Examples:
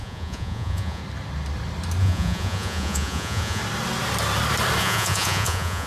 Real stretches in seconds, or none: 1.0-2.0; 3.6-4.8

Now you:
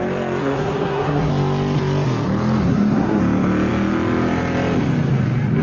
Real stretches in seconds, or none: 0.0-0.4; 1.3-2.6; 3.2-5.6

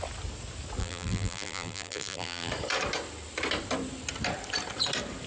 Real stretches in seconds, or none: 0.0-0.8; 2.5-5.3

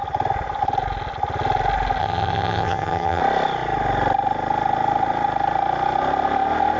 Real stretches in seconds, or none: 0.0-2.0; 3.2-6.8

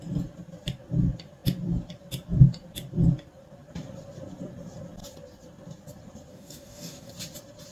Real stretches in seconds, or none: 0.0-6.3; 7.1-7.7

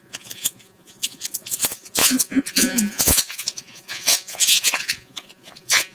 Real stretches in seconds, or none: none

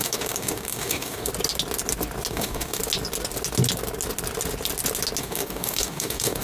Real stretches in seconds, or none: 1.3-2.3; 2.8-5.2

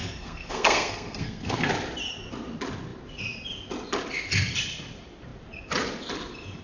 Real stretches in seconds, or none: 1.7-6.6